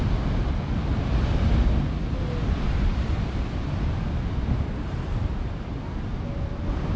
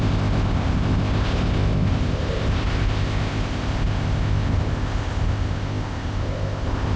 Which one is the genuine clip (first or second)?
first